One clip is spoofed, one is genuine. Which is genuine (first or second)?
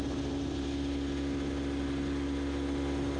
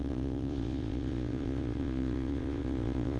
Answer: first